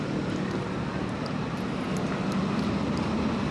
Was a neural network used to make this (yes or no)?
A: no